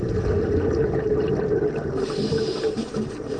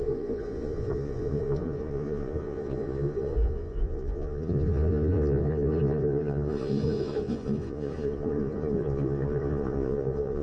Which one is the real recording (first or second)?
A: first